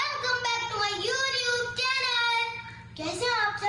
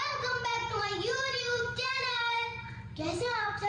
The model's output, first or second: second